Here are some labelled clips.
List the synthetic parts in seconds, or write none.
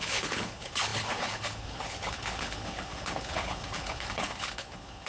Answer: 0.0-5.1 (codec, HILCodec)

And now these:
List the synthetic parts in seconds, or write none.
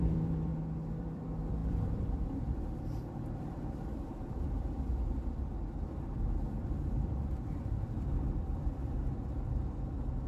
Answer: 0.0-0.5 (vocoder, BigVGAN v2); 1.0-4.9; 5.5-10.3